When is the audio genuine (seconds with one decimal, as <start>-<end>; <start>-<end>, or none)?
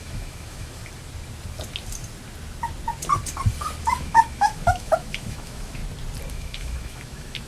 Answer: 0.8-3.8; 5.8-6.3